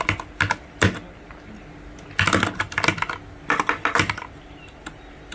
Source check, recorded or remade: recorded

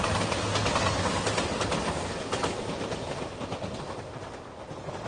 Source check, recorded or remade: recorded